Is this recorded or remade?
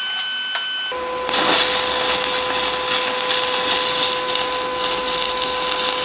recorded